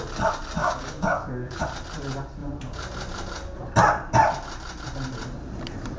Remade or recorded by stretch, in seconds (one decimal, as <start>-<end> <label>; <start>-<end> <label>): 0.0-0.6 recorded; 0.6-1.6 remade; 1.6-6.0 recorded